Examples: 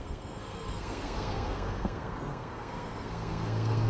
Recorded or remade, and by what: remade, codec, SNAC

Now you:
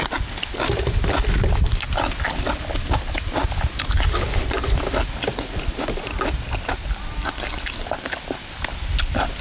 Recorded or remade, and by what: recorded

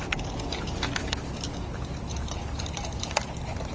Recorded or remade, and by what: recorded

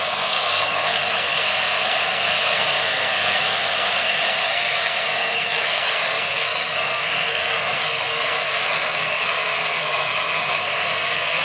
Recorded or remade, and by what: remade, codec, SNAC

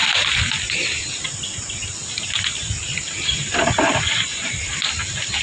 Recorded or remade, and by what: recorded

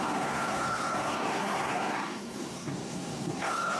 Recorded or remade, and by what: remade, codec, SNAC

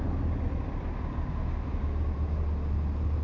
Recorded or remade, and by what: recorded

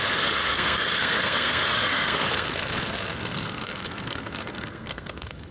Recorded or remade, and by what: remade, codec, SNAC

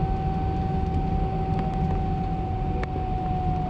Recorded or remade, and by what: recorded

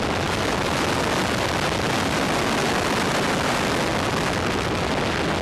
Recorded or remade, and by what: recorded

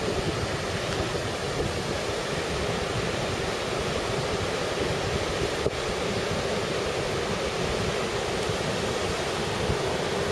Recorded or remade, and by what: recorded